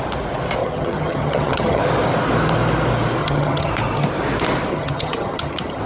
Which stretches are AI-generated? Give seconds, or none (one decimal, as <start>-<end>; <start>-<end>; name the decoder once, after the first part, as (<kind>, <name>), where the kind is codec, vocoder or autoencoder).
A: 0.6-1.8 (vocoder, HiFi-GAN); 3.2-3.7; 4.7-5.8